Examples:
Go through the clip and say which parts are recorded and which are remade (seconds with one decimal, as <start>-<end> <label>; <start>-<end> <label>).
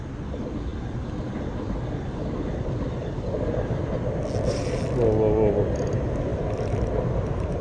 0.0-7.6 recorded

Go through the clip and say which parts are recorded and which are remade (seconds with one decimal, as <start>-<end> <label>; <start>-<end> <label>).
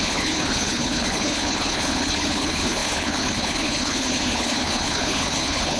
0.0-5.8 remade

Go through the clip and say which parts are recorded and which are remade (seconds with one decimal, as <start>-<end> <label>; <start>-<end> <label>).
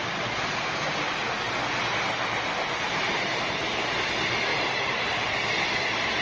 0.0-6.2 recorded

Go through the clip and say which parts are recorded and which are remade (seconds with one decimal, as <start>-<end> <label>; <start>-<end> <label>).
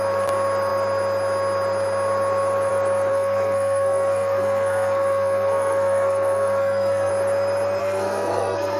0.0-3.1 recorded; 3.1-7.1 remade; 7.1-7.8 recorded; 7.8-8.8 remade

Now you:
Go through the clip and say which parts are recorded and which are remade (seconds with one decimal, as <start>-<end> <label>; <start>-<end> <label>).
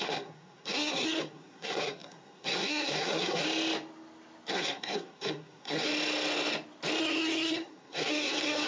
0.0-3.4 remade; 3.4-4.5 recorded; 4.5-5.9 remade; 5.9-7.0 recorded; 7.0-8.7 remade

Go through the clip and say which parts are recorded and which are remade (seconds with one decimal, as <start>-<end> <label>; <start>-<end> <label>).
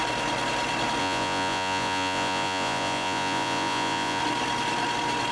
0.0-1.0 recorded; 1.0-4.2 remade; 4.2-5.3 recorded